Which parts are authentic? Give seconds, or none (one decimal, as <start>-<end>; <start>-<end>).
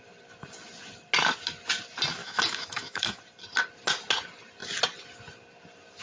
0.0-2.2; 3.2-6.0